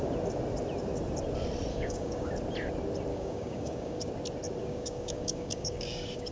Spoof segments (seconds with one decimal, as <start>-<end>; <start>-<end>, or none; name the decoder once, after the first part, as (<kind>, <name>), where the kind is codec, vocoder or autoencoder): 1.7-2.3 (codec, DAC); 3.1-4.1; 4.6-6.3